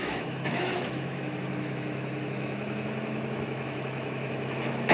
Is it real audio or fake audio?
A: fake